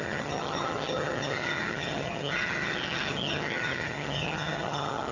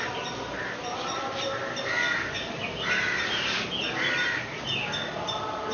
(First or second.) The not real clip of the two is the first